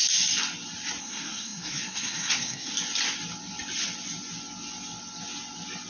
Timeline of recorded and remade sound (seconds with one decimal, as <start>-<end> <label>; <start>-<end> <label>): 0.0-1.0 recorded; 1.0-2.7 remade; 2.7-5.9 recorded